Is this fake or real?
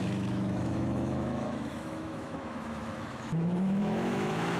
fake